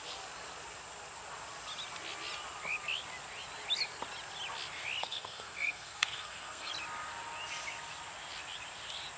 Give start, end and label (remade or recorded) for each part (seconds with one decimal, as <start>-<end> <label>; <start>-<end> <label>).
0.0-5.0 recorded; 5.0-6.7 remade; 6.7-9.2 recorded